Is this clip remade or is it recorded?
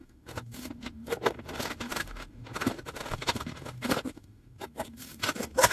remade